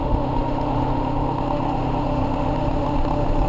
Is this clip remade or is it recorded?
remade